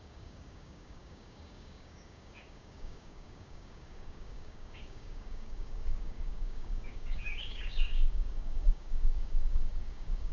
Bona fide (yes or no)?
no